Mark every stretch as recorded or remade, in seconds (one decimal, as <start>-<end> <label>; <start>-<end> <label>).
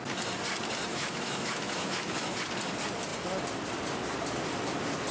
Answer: 0.0-0.9 recorded; 0.9-2.4 remade; 2.4-5.1 recorded